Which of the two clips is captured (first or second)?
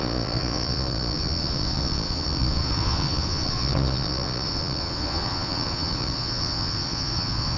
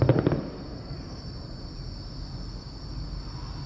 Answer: second